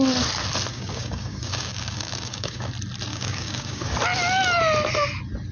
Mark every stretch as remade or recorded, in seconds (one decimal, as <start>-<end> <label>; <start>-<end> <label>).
0.0-0.7 recorded; 0.7-2.7 remade; 2.7-3.1 recorded; 3.1-3.8 remade; 3.8-5.5 recorded